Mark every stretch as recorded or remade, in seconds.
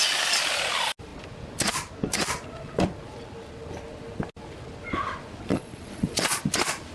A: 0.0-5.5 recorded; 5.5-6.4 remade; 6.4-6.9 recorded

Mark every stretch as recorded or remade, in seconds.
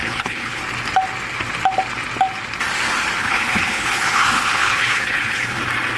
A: 0.0-0.6 remade; 0.6-3.2 recorded; 3.2-5.6 remade; 5.6-6.0 recorded